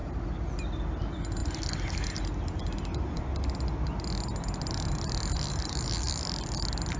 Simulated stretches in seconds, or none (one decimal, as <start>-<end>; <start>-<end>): none